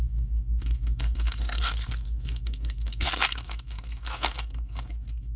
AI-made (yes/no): yes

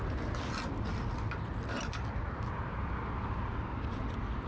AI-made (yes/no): no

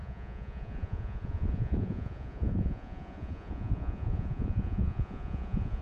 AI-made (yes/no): yes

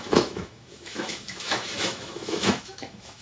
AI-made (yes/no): yes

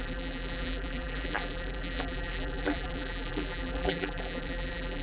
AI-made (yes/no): yes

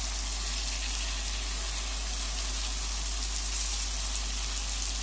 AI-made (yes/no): no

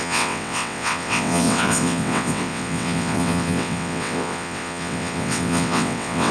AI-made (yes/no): yes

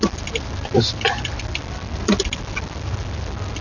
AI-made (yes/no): no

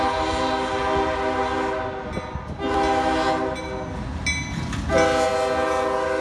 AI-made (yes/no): no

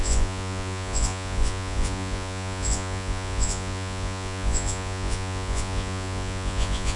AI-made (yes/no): yes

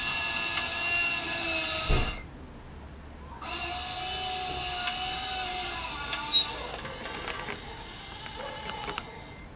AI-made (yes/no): no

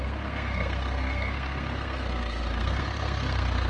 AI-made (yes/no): yes